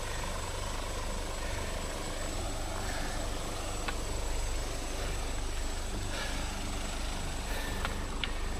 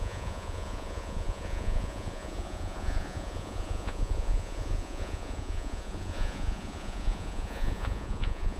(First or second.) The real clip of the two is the first